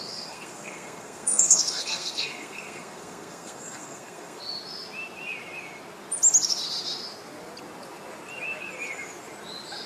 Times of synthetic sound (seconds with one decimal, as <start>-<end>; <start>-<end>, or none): 0.0-4.4